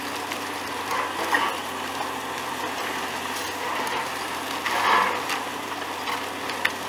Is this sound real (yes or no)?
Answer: yes